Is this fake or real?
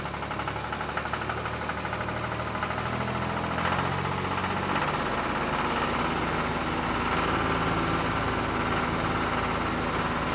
real